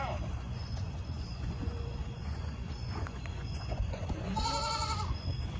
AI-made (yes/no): yes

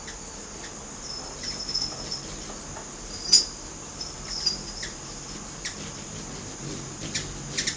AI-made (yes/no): no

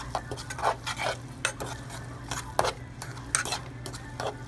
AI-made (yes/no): no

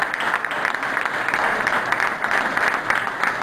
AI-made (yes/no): no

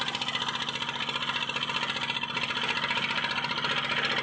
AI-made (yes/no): no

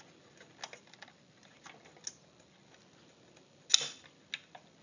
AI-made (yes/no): no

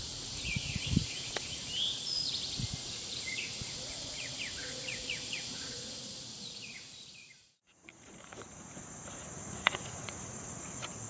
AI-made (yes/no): yes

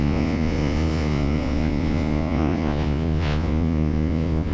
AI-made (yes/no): yes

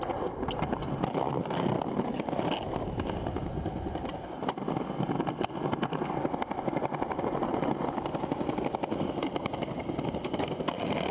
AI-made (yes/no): no